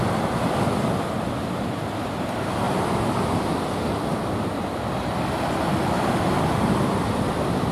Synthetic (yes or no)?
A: no